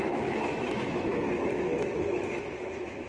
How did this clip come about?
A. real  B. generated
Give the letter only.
B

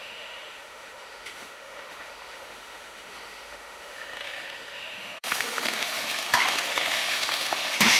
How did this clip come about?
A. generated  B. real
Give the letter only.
A